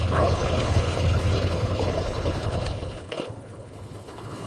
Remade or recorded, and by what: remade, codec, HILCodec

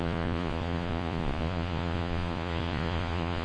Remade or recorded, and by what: remade, vocoder, Vocos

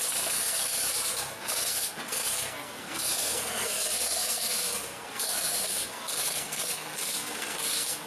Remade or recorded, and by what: remade, codec, SNAC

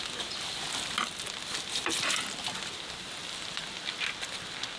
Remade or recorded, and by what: recorded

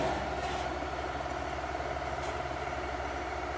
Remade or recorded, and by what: recorded